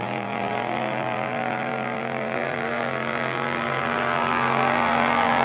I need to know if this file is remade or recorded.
remade